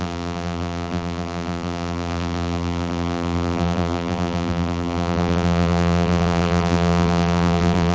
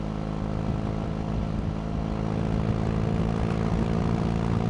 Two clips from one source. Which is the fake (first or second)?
first